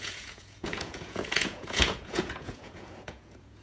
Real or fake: fake